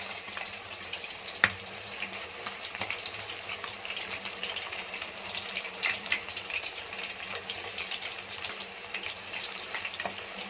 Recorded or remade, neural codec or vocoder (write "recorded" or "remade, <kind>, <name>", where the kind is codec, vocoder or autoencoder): remade, vocoder, BigVGAN v2